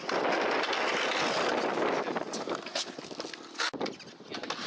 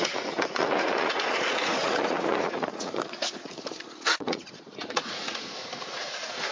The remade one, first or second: second